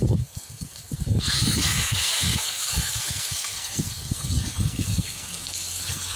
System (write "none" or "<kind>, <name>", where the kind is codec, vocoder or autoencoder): codec, SNAC